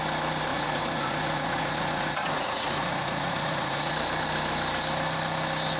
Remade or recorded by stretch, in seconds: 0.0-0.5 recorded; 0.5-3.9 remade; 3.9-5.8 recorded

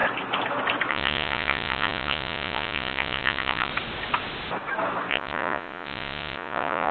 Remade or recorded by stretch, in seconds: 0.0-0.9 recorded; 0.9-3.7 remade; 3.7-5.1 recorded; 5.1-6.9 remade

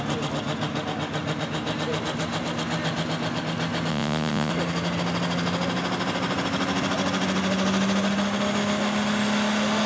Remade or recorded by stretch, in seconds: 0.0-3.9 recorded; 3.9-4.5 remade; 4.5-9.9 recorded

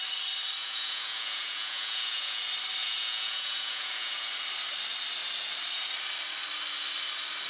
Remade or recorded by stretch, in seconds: 0.0-0.6 recorded; 0.6-2.4 remade; 2.4-2.8 recorded; 2.8-4.3 remade; 4.3-7.5 recorded

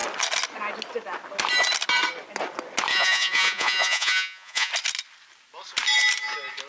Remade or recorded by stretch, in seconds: 0.0-2.9 recorded; 2.9-4.7 remade; 4.7-6.7 recorded

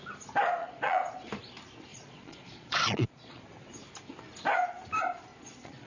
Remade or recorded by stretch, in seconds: 0.0-0.6 recorded; 0.6-1.3 remade; 1.3-1.9 recorded; 1.9-3.4 remade; 3.4-5.3 recorded; 5.3-5.9 remade